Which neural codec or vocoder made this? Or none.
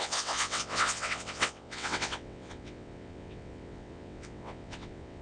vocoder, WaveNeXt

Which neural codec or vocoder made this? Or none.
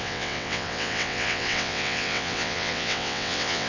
vocoder, WaveNeXt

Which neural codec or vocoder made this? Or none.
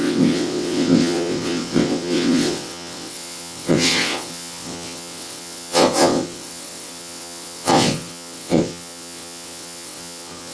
vocoder, WaveNeXt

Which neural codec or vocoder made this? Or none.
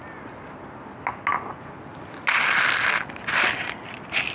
none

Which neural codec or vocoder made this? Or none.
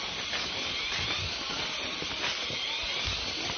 none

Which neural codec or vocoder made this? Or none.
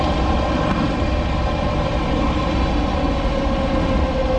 none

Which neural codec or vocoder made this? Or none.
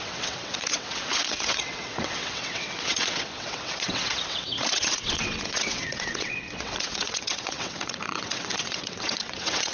vocoder, WaveNeXt